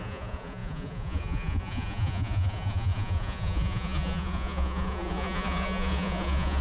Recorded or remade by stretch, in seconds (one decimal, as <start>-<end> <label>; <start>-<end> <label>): 0.0-6.6 remade